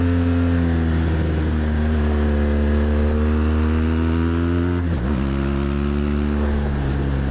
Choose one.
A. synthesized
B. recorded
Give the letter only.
B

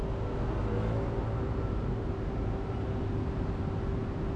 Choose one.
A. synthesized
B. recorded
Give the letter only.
B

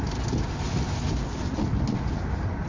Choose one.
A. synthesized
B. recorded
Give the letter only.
B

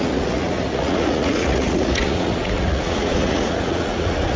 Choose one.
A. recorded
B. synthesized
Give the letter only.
B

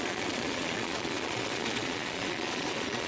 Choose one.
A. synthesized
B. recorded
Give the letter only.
A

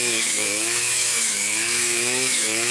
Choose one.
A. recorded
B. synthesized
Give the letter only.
B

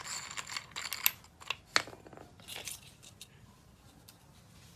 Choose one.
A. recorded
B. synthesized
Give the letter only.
A